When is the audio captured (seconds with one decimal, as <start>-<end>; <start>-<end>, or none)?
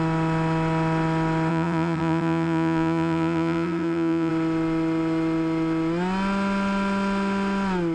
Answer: 0.0-1.5; 4.3-7.9